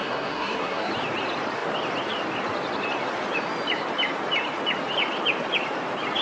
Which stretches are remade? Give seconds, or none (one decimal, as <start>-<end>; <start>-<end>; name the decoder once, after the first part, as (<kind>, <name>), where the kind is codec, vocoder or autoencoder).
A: 0.0-0.9 (codec, SNAC)